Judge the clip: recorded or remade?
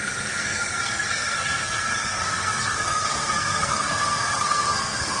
remade